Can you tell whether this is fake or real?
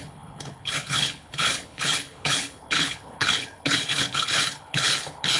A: fake